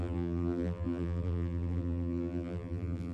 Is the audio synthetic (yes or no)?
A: yes